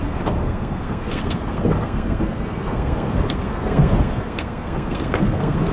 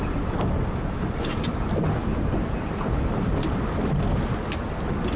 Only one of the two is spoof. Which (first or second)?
first